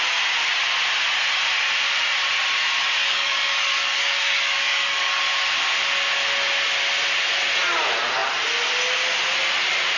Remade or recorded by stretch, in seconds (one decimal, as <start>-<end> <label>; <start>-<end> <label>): 0.0-3.0 recorded; 3.0-5.2 remade; 5.2-10.0 recorded